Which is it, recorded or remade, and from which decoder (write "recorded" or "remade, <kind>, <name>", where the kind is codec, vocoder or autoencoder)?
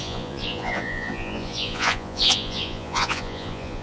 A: remade, vocoder, Vocos